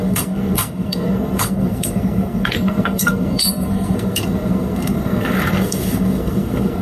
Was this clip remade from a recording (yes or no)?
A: yes